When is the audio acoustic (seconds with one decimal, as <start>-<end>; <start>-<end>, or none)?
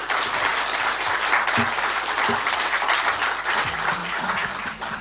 0.0-4.0; 4.5-5.0